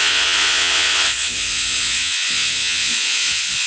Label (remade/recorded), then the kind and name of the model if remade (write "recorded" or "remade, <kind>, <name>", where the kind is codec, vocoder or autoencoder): remade, vocoder, Vocos